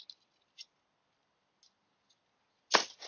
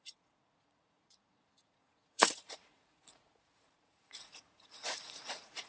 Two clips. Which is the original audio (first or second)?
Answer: first